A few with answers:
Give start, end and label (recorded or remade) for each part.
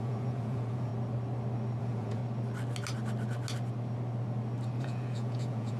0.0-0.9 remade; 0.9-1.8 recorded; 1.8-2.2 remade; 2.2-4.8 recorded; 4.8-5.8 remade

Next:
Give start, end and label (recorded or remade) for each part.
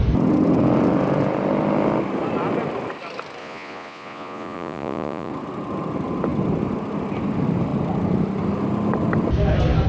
0.0-3.4 recorded; 3.4-5.3 remade; 5.3-9.9 recorded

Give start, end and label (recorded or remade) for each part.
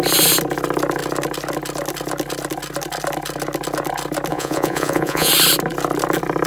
0.0-4.3 recorded; 4.3-5.3 remade; 5.3-6.5 recorded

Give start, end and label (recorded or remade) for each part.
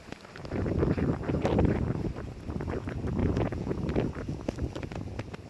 0.0-3.2 recorded; 3.2-3.7 remade; 3.7-5.5 recorded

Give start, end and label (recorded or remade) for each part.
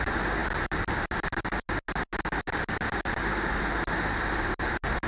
0.0-5.1 recorded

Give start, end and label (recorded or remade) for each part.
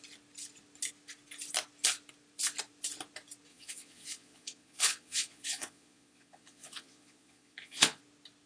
0.0-3.5 recorded; 3.5-8.0 remade; 8.0-8.5 recorded